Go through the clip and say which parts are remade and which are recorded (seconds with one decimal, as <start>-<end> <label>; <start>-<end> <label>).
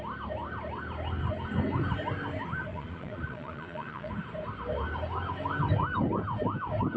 0.0-2.7 recorded; 2.7-4.1 remade; 4.1-7.0 recorded